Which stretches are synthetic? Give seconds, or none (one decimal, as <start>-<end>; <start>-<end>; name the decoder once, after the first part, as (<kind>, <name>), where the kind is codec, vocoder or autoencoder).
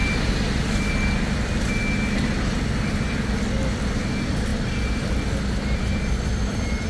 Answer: none